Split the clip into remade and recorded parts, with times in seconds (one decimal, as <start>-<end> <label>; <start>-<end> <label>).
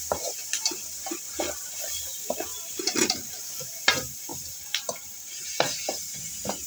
0.0-6.7 remade